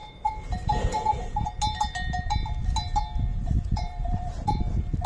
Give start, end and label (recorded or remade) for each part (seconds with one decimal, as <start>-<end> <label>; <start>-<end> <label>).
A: 0.0-1.4 remade; 1.4-3.3 recorded; 3.3-4.6 remade; 4.6-5.1 recorded